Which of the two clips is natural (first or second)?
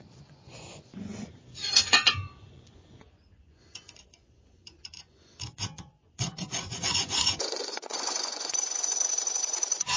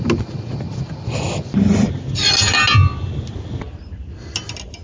second